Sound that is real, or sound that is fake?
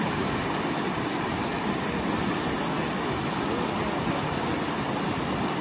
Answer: real